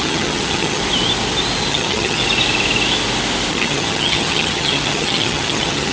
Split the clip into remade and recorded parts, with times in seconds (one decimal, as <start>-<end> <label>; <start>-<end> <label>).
0.0-0.8 remade; 0.8-1.7 recorded; 1.7-2.2 remade; 2.2-3.5 recorded; 3.5-5.9 remade